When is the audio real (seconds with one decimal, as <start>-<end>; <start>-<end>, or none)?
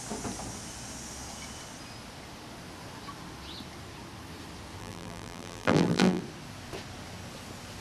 0.0-4.8; 6.2-7.8